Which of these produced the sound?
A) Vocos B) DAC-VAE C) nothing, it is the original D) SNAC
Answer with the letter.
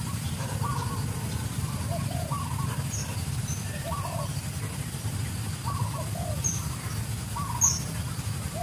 C